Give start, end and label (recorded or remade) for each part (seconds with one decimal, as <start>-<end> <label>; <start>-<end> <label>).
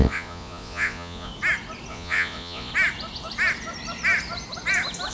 0.0-1.3 remade; 1.3-1.9 recorded; 1.9-2.7 remade; 2.7-5.1 recorded